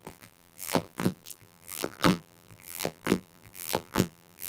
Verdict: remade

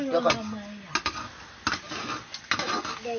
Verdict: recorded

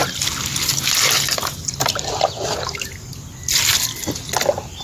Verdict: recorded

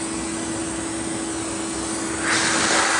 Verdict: recorded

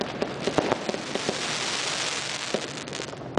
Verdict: recorded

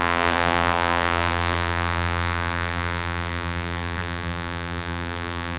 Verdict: remade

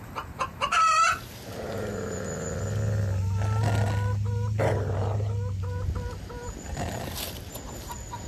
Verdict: recorded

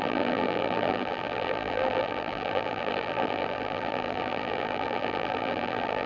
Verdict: remade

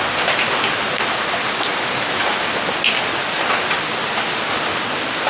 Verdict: recorded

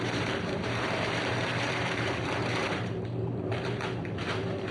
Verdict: remade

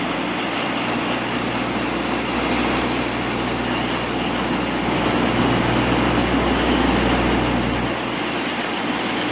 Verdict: recorded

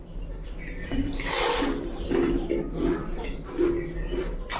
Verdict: remade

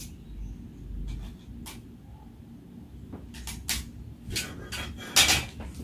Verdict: recorded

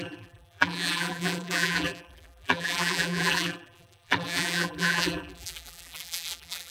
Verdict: remade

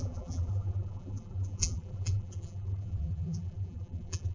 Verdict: remade